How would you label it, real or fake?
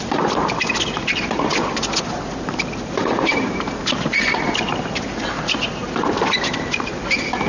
real